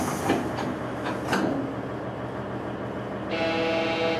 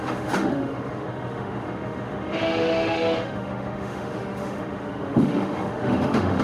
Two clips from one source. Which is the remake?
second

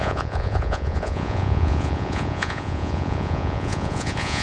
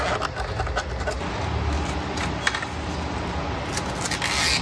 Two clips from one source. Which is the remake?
first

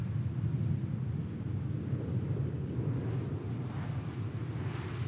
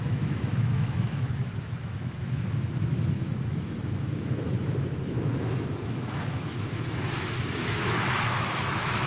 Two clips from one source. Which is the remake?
second